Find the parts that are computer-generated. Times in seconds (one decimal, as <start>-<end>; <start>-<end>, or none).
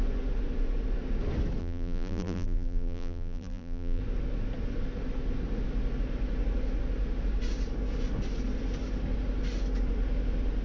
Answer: 1.6-4.0